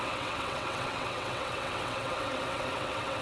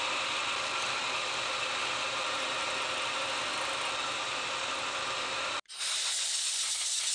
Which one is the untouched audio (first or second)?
second